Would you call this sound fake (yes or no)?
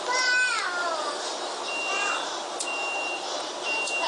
no